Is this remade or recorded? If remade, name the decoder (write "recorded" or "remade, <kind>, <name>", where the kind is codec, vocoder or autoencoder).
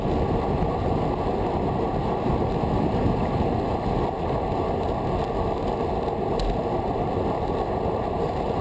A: recorded